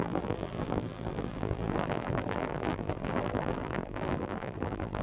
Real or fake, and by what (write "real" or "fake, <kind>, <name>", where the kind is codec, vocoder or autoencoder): fake, vocoder, BigVGAN v2